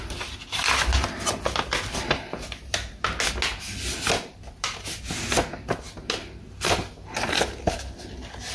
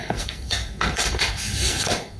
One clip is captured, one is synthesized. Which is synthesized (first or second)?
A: second